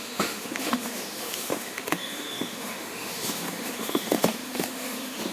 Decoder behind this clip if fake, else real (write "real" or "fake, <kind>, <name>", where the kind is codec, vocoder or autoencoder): fake, autoencoder, DAC-VAE